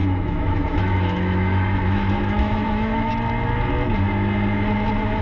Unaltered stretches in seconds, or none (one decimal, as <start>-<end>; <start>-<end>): 3.1-5.2